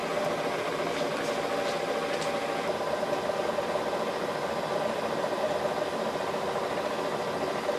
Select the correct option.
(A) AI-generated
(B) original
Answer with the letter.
B